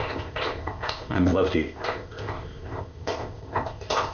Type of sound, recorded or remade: remade